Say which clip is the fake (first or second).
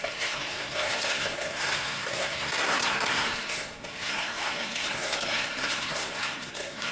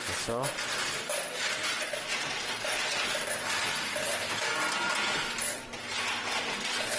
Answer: first